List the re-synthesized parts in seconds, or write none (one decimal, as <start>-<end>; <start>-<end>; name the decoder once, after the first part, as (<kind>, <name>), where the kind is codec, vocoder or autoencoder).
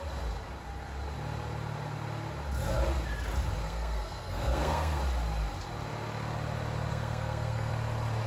3.6-5.0 (codec, SNAC); 6.9-7.7